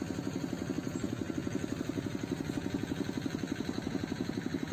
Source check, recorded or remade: recorded